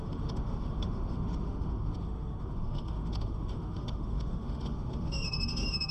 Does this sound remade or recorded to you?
remade